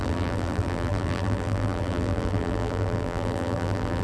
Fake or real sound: fake